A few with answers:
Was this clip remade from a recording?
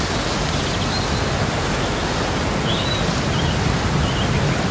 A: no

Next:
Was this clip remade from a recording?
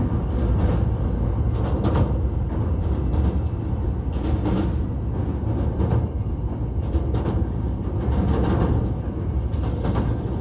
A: no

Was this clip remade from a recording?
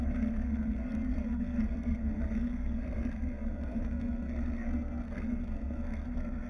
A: yes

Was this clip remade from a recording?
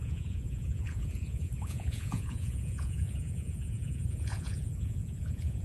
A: yes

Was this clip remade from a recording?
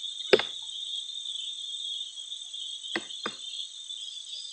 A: no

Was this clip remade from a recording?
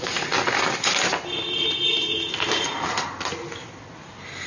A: no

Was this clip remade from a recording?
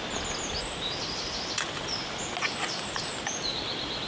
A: no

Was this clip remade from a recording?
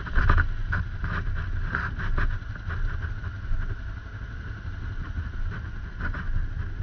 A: no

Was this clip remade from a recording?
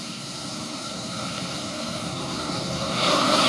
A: yes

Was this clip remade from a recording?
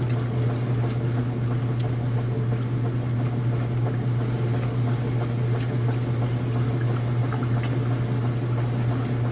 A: no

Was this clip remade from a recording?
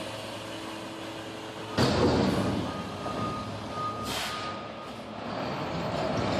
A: no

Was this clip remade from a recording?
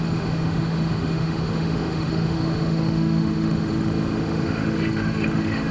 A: yes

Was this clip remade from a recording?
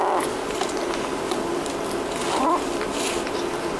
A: no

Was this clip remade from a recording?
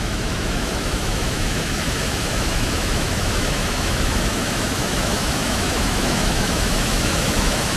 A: yes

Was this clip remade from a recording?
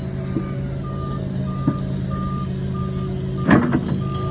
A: no